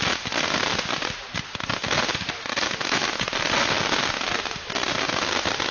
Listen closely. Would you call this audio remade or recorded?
recorded